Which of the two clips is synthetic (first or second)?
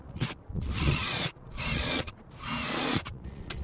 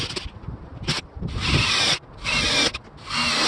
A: first